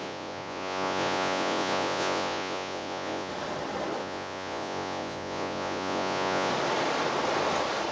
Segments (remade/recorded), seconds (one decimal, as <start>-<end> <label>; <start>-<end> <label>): 0.0-3.3 remade; 3.3-4.0 recorded; 4.0-6.5 remade; 6.5-7.9 recorded